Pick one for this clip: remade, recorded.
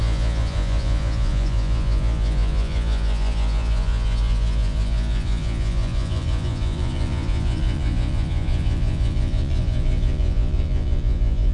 remade